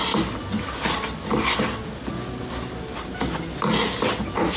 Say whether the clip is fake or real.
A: real